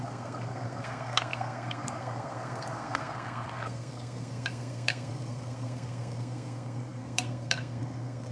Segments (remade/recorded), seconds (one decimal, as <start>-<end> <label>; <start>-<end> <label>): 0.0-8.3 remade